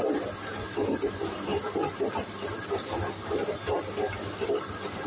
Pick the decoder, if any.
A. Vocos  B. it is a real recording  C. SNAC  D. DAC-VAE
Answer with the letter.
B